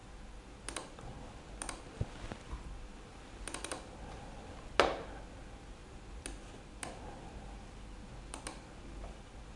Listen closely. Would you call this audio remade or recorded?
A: recorded